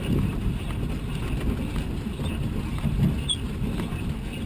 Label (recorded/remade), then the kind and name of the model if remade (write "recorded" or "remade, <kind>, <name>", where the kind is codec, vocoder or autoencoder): recorded